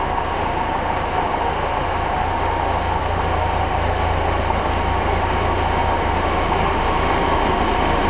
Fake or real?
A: fake